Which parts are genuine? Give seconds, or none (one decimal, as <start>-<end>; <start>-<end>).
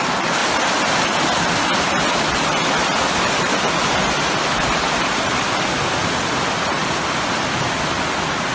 0.0-8.5